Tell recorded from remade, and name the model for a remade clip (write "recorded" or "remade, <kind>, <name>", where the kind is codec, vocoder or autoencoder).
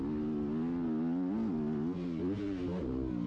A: recorded